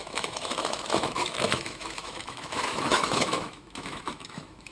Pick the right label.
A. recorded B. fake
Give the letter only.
B